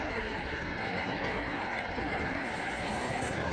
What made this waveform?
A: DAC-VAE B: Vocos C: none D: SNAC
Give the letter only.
D